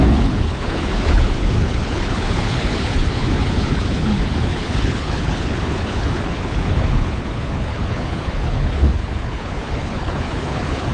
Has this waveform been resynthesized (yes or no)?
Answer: yes